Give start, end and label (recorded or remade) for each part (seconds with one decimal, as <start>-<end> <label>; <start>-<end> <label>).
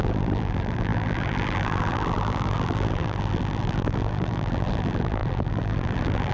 0.0-6.3 remade